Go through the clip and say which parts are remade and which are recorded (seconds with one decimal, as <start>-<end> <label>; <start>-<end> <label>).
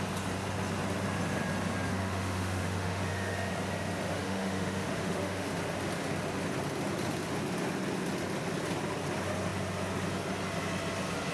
0.0-1.9 recorded; 1.9-3.5 remade; 3.5-4.1 recorded; 4.1-5.5 remade; 5.5-11.3 recorded